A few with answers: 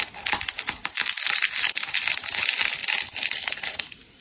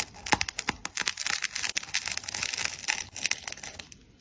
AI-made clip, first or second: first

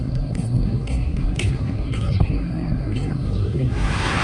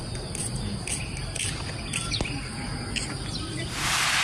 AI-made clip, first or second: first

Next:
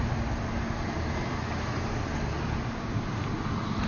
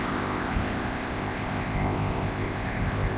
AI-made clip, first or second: second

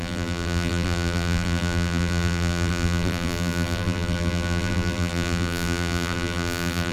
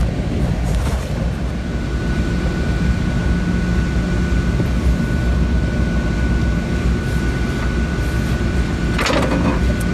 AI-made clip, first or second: first